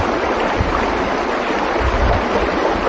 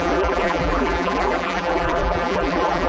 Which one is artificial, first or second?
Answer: second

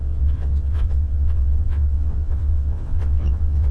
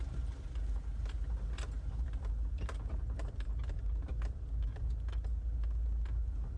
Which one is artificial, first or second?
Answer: first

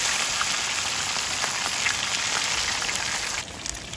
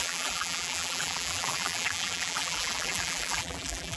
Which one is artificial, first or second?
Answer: second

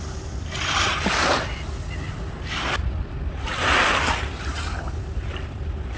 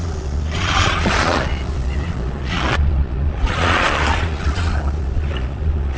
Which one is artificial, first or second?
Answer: second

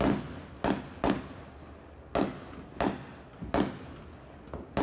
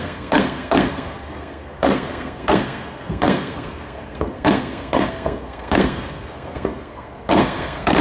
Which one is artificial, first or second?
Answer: second